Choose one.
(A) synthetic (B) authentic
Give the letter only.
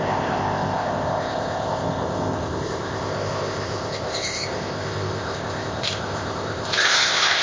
A